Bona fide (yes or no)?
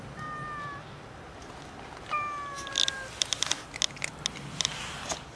yes